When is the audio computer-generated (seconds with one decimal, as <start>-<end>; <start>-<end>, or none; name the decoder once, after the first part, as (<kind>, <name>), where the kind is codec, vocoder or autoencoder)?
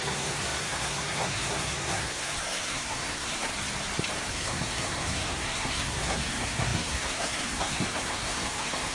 0.0-3.5 (codec, SNAC); 4.3-8.9